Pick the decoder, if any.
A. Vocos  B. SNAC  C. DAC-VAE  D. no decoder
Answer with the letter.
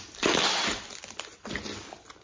D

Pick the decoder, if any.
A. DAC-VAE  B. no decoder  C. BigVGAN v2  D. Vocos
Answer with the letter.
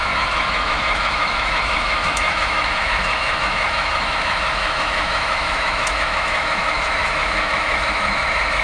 A